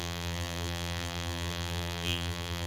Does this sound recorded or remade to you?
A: remade